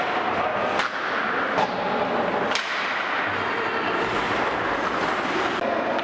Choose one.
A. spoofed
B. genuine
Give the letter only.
B